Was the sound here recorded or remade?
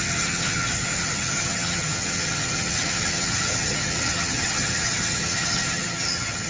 remade